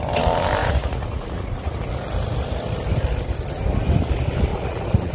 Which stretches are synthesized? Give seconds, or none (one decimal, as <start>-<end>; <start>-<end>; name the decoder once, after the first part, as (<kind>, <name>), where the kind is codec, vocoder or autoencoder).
0.6-1.7 (vocoder, Vocos); 4.5-5.1